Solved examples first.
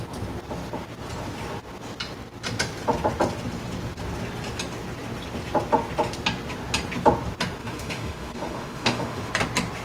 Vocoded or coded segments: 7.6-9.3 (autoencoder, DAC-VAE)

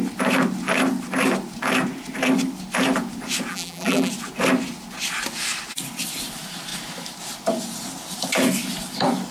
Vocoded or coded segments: 3.5-4.1 (vocoder, BigVGAN v2)